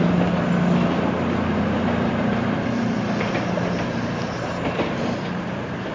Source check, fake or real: real